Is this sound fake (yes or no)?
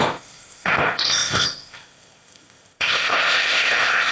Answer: yes